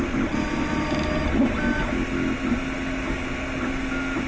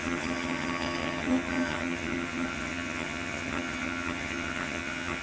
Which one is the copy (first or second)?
second